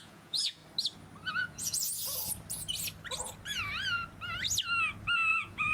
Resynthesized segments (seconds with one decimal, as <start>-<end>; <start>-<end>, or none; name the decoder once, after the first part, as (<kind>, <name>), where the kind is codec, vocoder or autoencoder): 0.0-0.6 (vocoder, Vocos); 1.3-1.9; 5.3-5.7